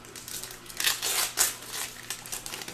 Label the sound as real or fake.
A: real